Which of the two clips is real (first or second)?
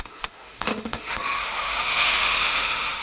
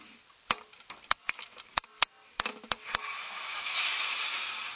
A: second